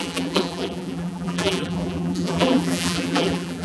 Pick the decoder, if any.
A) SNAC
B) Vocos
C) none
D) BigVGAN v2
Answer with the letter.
D